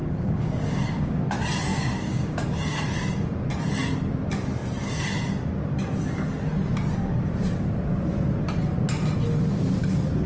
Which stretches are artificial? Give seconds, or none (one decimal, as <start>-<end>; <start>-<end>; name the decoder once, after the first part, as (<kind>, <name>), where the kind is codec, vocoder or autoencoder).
0.0-1.2 (codec, DAC); 1.7-2.8